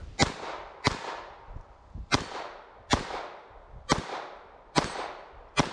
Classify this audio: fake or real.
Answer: real